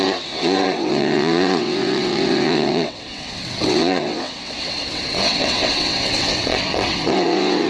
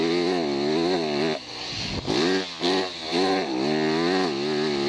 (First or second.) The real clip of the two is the second